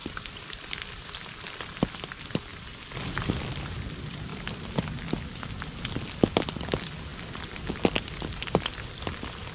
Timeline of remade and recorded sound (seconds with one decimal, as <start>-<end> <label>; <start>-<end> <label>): 0.0-0.7 remade; 0.7-9.5 recorded